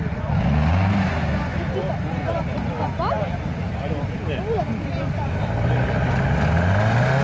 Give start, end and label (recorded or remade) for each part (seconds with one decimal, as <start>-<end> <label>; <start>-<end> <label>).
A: 0.0-7.2 recorded